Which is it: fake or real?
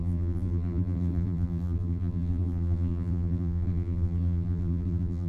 fake